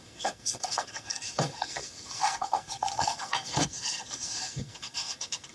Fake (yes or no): yes